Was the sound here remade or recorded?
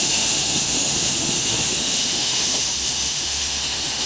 remade